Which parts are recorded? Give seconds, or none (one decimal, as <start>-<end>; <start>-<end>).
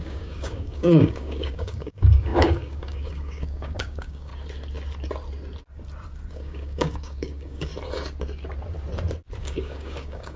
4.3-6.3; 7.7-9.4